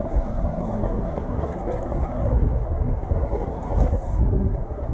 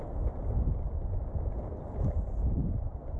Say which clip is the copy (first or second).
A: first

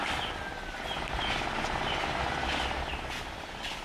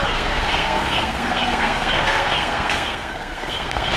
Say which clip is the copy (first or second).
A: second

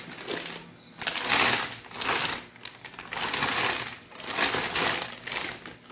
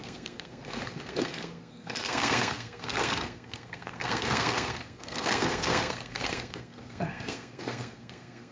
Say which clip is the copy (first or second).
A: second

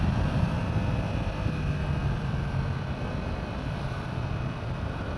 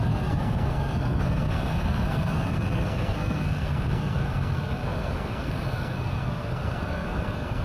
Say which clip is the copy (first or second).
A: second